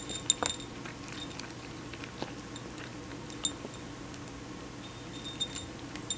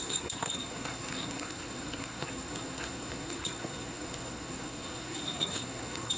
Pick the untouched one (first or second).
first